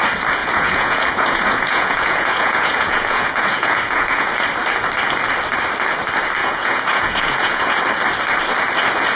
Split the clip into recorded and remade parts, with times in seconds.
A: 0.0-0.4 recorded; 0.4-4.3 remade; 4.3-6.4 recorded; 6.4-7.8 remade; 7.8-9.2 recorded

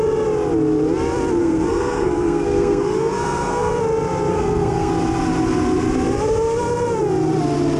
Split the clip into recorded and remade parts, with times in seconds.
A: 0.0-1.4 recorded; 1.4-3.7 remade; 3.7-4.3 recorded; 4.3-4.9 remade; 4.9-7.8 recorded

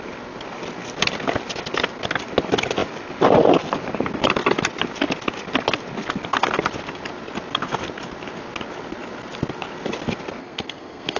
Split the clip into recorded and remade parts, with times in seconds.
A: 0.0-10.4 recorded; 10.4-11.2 remade